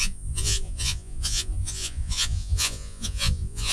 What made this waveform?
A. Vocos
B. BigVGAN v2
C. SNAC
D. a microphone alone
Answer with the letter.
A